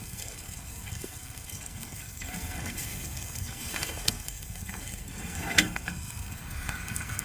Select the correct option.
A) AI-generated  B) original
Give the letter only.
A